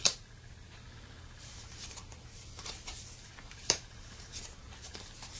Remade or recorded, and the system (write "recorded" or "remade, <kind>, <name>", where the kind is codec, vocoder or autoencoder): remade, vocoder, BigVGAN v2